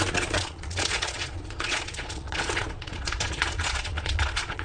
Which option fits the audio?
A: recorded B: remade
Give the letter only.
B